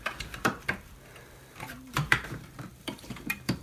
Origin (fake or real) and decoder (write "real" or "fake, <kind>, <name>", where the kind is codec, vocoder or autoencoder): fake, vocoder, BigVGAN v2